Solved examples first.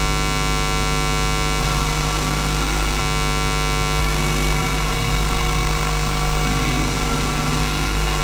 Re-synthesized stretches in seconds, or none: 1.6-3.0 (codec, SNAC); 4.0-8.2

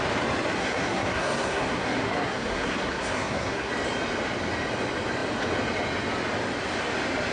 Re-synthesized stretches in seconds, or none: 0.5-3.7 (codec, SNAC)

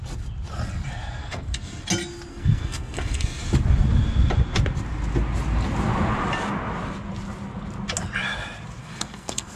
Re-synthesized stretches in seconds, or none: 1.2-1.8 (codec, SNAC); 2.3-3.4; 8.8-9.6

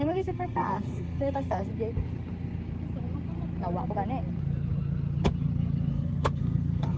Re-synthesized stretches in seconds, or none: 0.0-1.7 (codec, SNAC); 5.9-7.0

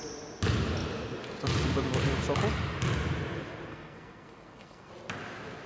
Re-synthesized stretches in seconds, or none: 3.7-4.9 (codec, SNAC)

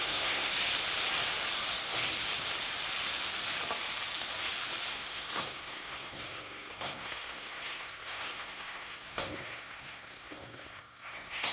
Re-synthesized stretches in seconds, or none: 0.0-0.5 (codec, SNAC); 4.9-11.5

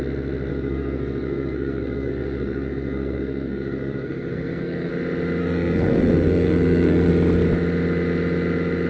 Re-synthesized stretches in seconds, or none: 0.5-4.9 (codec, SNAC); 5.4-7.1